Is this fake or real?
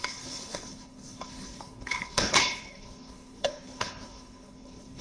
fake